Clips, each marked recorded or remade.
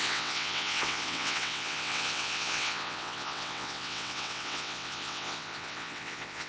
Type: remade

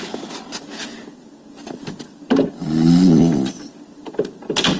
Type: recorded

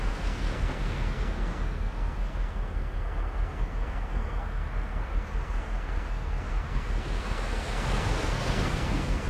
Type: remade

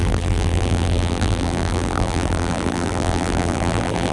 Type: remade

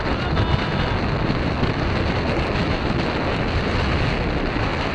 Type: recorded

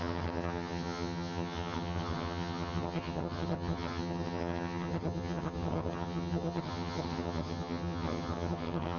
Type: remade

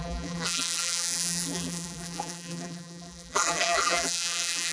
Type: remade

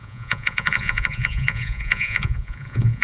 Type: remade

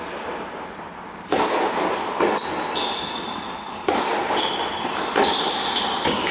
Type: recorded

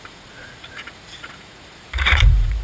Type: remade